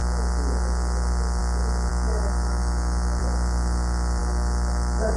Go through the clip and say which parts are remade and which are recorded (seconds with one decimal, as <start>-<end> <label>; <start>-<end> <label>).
0.0-1.9 recorded; 1.9-3.2 remade; 3.2-4.2 recorded; 4.2-5.2 remade